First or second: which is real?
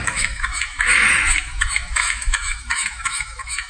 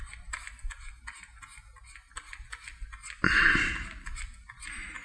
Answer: second